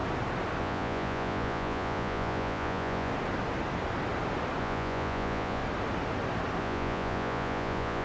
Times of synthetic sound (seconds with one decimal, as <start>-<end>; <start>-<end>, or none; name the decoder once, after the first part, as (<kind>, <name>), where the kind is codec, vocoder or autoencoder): 0.6-3.1 (vocoder, Vocos); 4.6-5.6; 6.6-8.0